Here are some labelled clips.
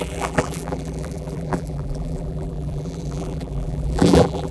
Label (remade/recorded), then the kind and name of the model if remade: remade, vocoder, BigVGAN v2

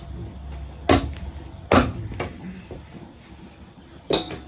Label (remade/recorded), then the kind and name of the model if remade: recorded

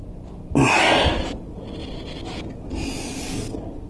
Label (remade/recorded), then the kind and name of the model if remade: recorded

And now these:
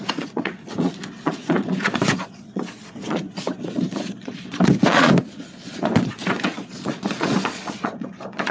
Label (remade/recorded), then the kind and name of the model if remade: remade, vocoder, Vocos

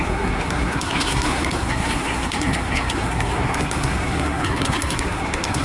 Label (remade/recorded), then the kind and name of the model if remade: remade, codec, SNAC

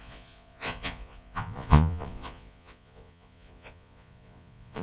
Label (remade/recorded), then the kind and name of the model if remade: remade, vocoder, Vocos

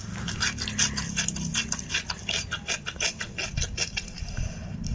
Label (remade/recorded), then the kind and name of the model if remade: recorded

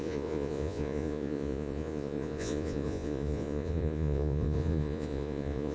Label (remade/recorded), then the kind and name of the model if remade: remade, vocoder, Vocos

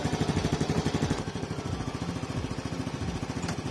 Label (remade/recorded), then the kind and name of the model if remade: recorded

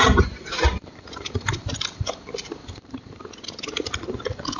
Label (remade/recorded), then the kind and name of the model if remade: remade, vocoder, BigVGAN v2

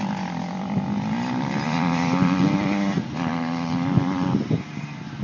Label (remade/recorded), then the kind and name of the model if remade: recorded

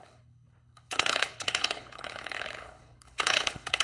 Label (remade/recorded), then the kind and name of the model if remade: remade, codec, HILCodec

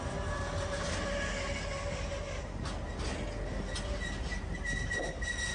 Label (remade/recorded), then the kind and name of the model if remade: recorded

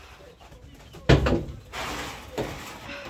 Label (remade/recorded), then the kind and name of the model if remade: recorded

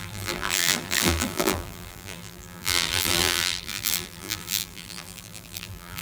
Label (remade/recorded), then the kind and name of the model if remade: remade, vocoder, BigVGAN v2